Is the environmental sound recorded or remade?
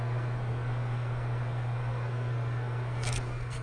remade